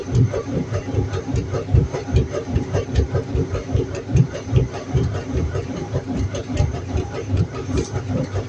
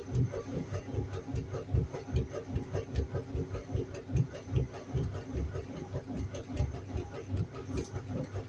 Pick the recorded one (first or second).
second